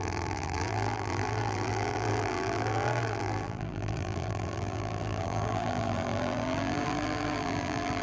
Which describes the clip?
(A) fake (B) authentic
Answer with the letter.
A